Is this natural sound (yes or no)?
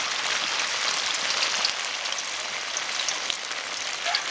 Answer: yes